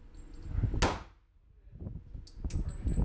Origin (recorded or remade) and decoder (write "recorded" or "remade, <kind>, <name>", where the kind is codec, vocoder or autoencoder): recorded